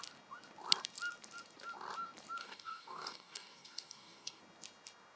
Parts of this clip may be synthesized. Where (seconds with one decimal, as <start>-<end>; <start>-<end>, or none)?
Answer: 2.4-4.4